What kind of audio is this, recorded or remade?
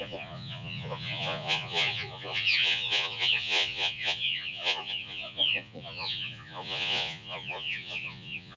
remade